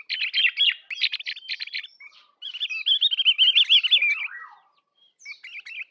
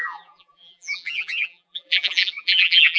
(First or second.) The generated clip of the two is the second